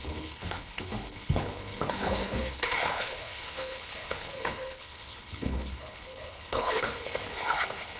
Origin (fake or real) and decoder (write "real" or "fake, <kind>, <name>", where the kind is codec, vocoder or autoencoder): fake, codec, HILCodec